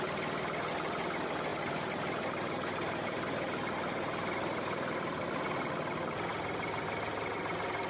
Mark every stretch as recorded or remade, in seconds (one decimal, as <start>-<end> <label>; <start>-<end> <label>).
0.0-1.5 recorded; 1.5-5.3 remade; 5.3-7.9 recorded